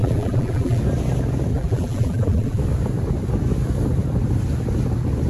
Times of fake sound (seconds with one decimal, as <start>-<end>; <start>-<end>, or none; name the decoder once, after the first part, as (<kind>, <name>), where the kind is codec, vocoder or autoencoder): 0.0-0.8 (vocoder, BigVGAN v2); 1.5-2.6